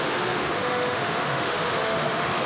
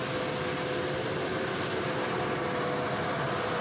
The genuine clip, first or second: second